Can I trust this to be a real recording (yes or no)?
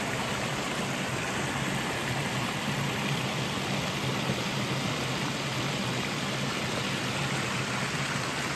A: yes